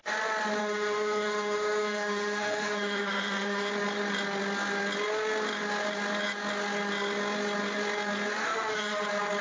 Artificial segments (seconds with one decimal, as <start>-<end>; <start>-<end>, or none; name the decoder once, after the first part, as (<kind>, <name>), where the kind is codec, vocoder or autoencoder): 0.6-3.7 (autoencoder, DAC-VAE); 8.4-9.0